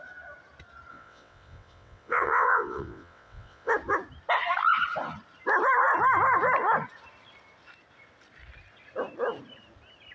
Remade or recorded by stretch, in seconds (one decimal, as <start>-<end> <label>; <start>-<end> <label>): 0.0-0.9 recorded; 0.9-3.7 remade; 3.7-10.1 recorded